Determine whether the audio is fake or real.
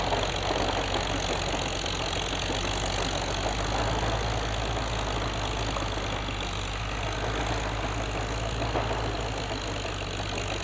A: real